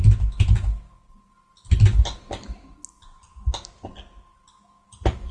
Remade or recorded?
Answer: recorded